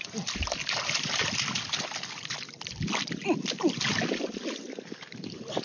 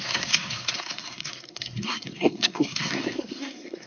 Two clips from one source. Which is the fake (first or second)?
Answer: second